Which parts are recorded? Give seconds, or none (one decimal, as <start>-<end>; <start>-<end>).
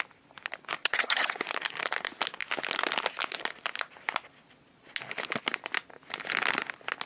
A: 0.0-0.8; 1.4-7.1